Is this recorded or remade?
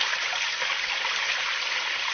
recorded